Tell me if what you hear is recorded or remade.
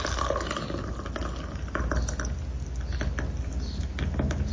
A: recorded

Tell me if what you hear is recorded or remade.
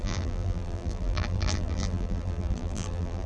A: remade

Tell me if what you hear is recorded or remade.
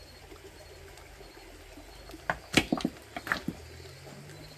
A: recorded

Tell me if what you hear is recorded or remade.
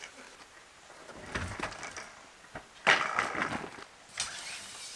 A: recorded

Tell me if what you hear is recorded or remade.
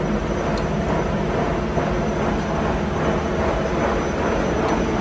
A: recorded